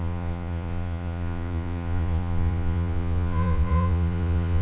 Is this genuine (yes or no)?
no